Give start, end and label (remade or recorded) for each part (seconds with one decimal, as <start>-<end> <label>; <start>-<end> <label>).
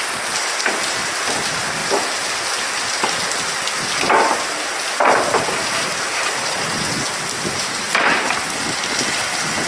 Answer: 0.0-9.7 recorded